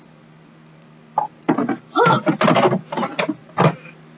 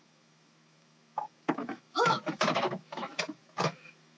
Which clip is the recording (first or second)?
first